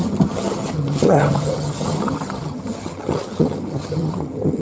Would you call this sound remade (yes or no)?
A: yes